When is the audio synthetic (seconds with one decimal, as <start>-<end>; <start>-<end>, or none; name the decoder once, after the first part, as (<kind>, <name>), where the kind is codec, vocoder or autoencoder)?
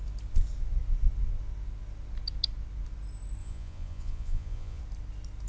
3.4-4.8 (vocoder, Vocos)